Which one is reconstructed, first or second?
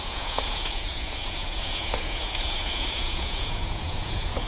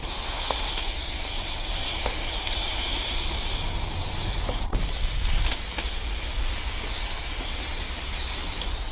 first